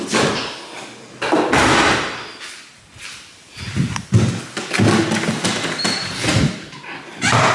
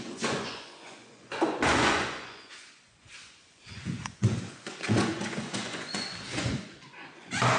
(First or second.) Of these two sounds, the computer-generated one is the second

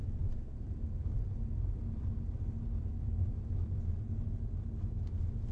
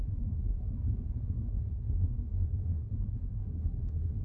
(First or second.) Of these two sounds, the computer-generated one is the second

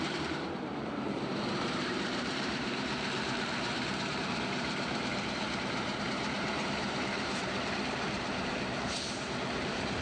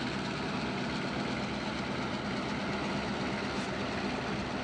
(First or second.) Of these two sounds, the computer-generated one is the first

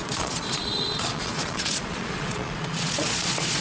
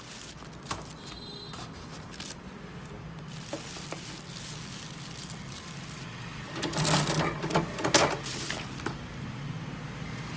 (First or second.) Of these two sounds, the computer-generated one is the first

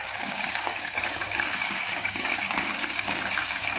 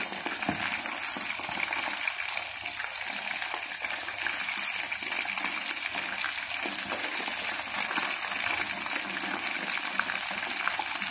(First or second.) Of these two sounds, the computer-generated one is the first